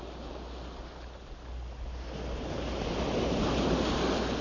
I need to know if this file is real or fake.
real